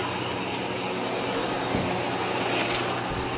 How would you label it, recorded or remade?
recorded